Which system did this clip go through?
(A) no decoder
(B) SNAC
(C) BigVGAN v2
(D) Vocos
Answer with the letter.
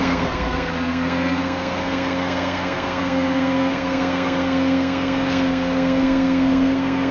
B